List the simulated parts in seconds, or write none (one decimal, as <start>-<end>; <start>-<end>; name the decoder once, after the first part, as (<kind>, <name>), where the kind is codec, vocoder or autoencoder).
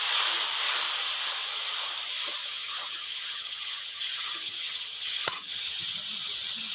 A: 2.4-5.8 (vocoder, HiFi-GAN)